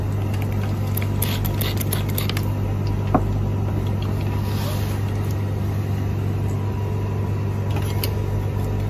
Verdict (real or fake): real